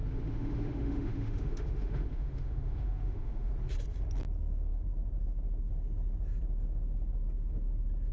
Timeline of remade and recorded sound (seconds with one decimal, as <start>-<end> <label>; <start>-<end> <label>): 0.0-3.5 remade; 3.5-8.1 recorded